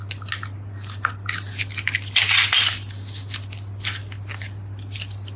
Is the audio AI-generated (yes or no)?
no